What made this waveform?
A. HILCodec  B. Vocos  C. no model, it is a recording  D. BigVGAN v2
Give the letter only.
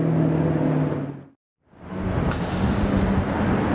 C